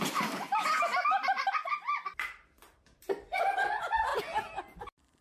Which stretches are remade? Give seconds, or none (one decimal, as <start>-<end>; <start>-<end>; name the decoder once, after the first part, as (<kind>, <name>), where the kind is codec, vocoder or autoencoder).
0.0-4.1 (vocoder, BigVGAN v2); 4.8-5.2